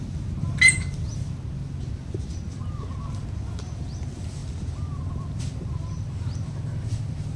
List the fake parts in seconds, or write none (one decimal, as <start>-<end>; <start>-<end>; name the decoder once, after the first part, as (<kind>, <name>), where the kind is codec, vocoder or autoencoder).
none